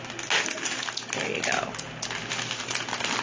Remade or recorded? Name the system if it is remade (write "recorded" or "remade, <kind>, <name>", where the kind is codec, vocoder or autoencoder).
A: recorded